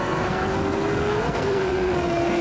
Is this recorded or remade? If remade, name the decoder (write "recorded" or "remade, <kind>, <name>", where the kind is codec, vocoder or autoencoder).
remade, codec, SNAC